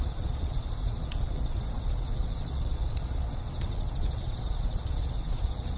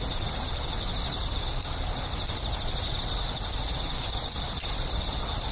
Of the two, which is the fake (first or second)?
first